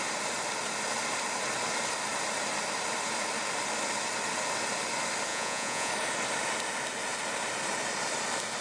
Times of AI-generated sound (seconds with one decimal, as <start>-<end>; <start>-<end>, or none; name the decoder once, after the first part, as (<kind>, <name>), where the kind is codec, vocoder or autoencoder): 5.3-5.9 (vocoder, Vocos)

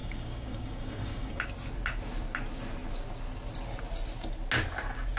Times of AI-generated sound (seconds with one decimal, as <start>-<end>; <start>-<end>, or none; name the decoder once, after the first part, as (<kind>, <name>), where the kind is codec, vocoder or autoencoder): 0.0-1.4 (codec, DAC)

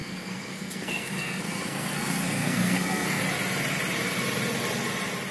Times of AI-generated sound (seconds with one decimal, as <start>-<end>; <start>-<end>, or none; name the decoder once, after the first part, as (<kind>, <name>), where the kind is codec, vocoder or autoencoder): 0.0-3.2 (codec, SNAC)

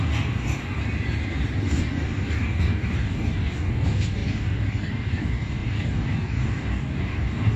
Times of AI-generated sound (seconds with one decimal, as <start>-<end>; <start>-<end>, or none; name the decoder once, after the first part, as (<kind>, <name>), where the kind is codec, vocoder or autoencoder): 0.0-0.8 (codec, DAC); 1.6-7.6

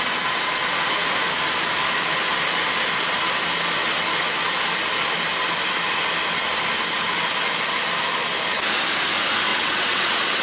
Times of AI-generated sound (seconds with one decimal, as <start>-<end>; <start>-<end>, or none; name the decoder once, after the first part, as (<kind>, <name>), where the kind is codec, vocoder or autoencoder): 9.5-10.4 (vocoder, WaveNeXt)

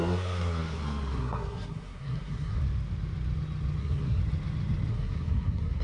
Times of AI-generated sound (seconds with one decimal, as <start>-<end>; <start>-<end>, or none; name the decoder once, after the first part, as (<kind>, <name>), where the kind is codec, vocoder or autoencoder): 0.0-2.6 (codec, SNAC); 3.8-4.2; 4.9-5.8

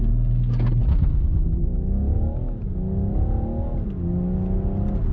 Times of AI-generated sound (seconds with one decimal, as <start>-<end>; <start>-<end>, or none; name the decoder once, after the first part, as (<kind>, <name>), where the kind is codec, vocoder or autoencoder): none

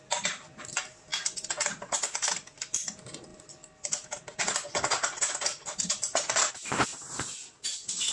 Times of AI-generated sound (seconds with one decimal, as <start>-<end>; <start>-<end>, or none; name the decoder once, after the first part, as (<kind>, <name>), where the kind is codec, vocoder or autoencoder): none